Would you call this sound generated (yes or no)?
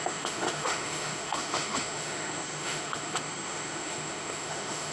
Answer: yes